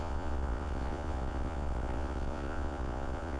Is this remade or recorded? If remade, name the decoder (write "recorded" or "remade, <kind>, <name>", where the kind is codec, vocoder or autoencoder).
remade, vocoder, Vocos